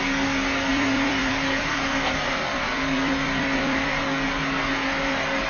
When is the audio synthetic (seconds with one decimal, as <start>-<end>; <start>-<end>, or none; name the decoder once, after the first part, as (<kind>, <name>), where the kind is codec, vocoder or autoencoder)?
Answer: 0.7-4.0 (vocoder, BigVGAN v2)